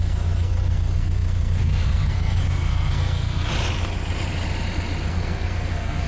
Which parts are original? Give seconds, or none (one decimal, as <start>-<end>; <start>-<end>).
3.5-5.1